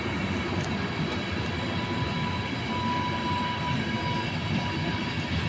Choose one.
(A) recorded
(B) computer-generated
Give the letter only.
A